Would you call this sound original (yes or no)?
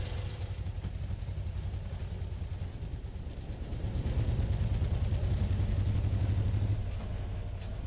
yes